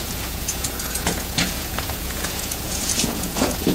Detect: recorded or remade remade